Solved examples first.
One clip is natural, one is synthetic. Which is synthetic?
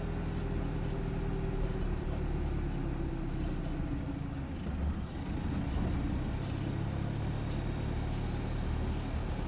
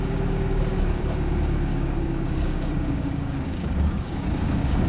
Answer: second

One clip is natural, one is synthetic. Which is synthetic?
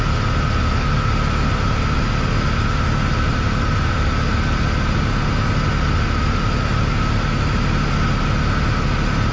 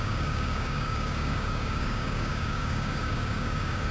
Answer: second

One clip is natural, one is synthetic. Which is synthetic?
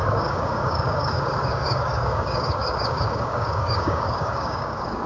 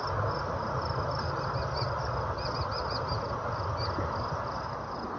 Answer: first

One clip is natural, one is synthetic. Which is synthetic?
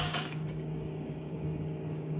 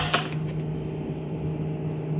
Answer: first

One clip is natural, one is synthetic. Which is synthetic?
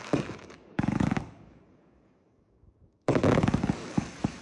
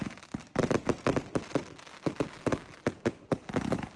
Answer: first